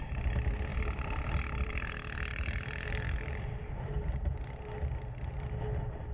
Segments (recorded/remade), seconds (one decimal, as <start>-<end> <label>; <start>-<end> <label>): 0.0-0.7 recorded; 0.7-1.7 remade; 1.7-2.3 recorded; 2.3-4.4 remade; 4.4-6.1 recorded

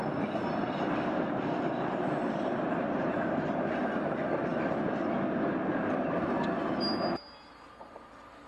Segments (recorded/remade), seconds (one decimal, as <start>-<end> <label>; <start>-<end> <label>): 0.0-3.1 remade; 3.1-8.5 recorded

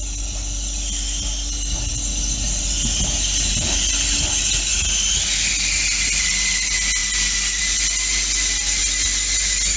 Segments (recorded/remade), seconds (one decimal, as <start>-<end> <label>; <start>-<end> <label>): 0.0-9.8 recorded

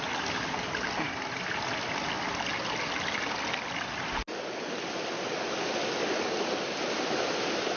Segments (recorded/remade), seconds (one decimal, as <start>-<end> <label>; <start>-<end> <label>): 0.0-7.8 recorded

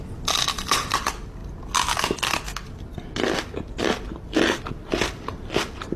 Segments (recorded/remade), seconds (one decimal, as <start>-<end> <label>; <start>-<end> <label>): 0.0-1.4 remade; 1.4-4.6 recorded; 4.6-6.0 remade